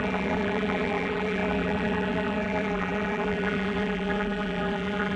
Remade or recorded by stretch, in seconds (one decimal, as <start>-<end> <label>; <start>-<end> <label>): 0.0-5.2 remade